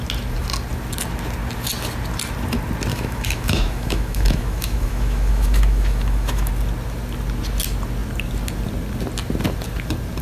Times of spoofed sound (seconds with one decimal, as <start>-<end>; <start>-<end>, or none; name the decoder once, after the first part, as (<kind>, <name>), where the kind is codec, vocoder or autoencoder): 2.9-6.5 (autoencoder, DAC-VAE)